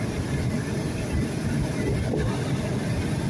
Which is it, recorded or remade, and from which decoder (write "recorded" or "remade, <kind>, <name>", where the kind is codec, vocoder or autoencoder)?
recorded